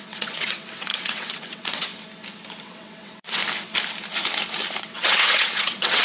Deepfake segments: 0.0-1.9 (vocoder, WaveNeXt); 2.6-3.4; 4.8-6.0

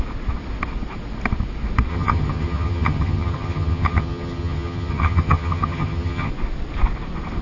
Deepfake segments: 1.9-6.3 (vocoder, HiFi-GAN)

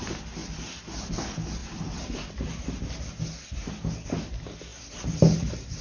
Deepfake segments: 1.6-3.2 (vocoder, BigVGAN v2)

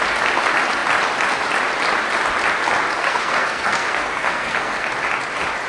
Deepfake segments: 3.0-4.9 (codec, SNAC)

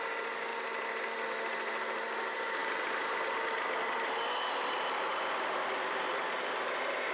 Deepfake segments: none

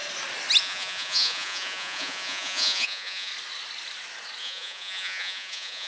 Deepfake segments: 0.6-3.3 (vocoder, Vocos); 4.4-5.9